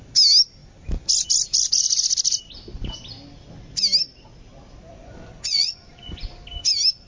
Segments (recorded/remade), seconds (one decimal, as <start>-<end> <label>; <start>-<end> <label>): 0.0-5.0 recorded; 5.0-6.2 remade; 6.2-7.1 recorded